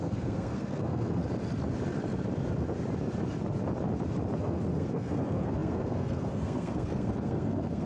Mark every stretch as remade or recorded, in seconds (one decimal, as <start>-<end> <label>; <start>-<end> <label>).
0.0-1.2 remade; 1.2-4.4 recorded; 4.4-7.9 remade